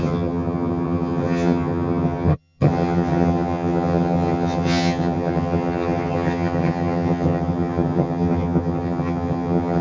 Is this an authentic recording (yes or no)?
no